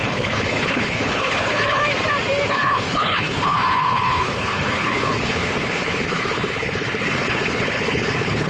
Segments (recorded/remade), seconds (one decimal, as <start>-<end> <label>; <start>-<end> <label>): 0.0-1.8 remade; 1.8-2.5 recorded; 2.5-8.5 remade